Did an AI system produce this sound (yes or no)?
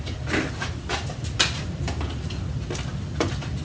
no